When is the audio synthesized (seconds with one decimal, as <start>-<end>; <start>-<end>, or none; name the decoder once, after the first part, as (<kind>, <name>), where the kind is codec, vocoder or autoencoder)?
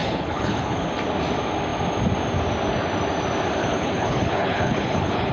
0.0-0.9 (codec, HILCodec); 3.6-5.3